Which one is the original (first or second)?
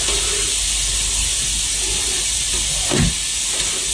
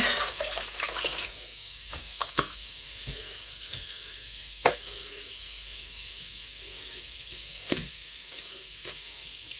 first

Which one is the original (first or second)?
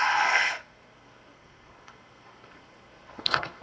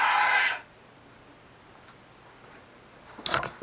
second